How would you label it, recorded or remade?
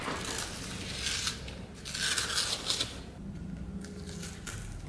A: recorded